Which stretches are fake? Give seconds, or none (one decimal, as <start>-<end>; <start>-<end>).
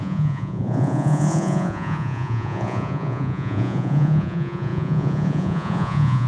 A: 0.0-6.3